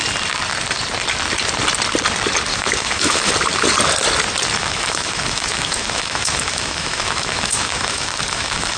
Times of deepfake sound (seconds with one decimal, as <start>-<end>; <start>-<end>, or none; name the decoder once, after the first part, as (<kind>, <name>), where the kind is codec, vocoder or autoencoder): 2.5-3.3 (autoencoder, DAC-VAE); 4.6-8.8